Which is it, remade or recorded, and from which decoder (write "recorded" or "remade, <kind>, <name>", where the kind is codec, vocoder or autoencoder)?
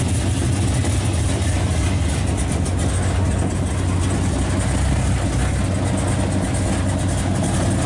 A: recorded